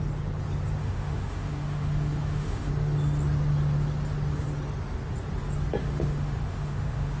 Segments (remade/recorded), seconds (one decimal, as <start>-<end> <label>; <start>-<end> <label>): 0.0-0.8 recorded; 0.8-2.7 remade; 2.7-5.8 recorded; 5.8-7.2 remade